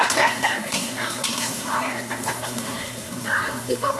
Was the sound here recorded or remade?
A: remade